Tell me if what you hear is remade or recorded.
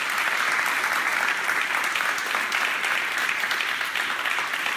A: recorded